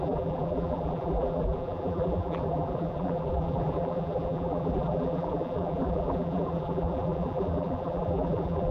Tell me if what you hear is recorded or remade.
remade